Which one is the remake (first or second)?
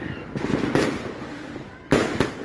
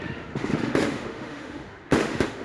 second